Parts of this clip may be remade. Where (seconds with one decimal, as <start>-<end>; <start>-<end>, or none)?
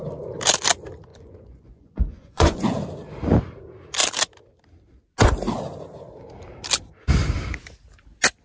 1.1-2.6